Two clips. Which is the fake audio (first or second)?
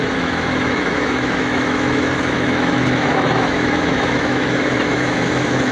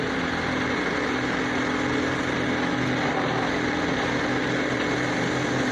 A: first